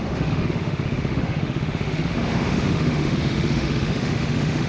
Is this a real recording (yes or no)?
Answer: no